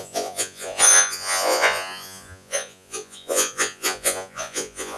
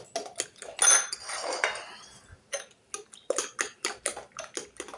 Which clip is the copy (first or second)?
first